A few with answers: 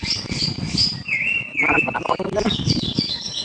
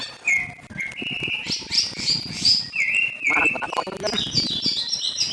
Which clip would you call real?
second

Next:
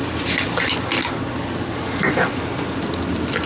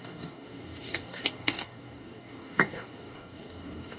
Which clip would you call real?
first